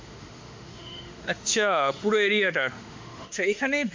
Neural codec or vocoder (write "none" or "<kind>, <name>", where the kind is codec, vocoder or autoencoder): autoencoder, DAC-VAE